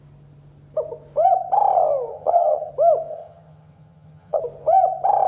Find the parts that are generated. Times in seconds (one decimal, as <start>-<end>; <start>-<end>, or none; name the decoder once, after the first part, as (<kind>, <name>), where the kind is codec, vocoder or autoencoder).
2.1-2.7 (vocoder, HiFi-GAN); 3.1-4.4